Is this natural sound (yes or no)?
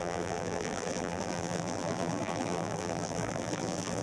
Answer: no